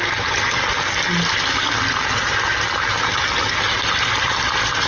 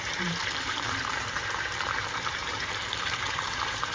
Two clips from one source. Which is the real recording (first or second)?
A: first